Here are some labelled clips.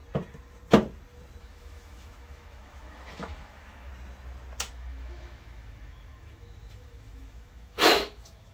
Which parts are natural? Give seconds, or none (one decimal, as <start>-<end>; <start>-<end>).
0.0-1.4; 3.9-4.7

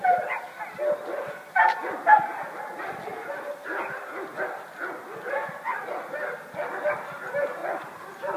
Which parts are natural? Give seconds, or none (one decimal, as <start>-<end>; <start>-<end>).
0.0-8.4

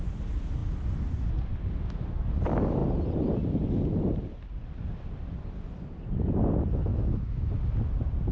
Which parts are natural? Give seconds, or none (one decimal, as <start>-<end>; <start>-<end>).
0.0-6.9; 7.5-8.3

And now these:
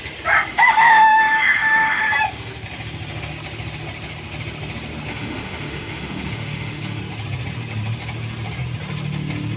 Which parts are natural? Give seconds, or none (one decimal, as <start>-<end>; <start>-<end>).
0.0-0.5; 2.1-5.1; 7.0-9.6

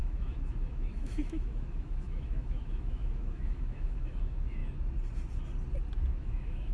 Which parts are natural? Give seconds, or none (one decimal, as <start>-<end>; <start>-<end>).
4.6-6.1

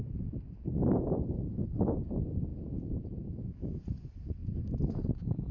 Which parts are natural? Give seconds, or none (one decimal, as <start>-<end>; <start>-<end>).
0.0-2.5; 3.8-5.5

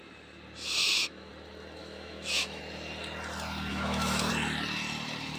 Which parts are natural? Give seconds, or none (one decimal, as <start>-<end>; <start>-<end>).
0.0-0.8; 1.3-1.8; 2.6-3.7; 4.3-5.4